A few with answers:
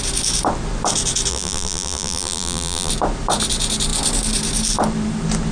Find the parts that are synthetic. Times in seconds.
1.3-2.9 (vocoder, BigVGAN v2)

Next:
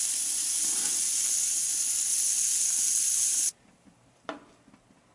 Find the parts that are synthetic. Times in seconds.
3.3-4.4 (vocoder, BigVGAN v2)

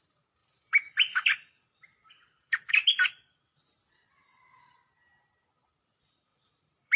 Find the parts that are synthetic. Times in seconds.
0.4-2.7 (vocoder, BigVGAN v2); 6.3-7.0